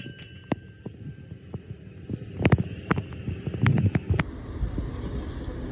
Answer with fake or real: real